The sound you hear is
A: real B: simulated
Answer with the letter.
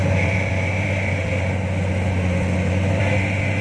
A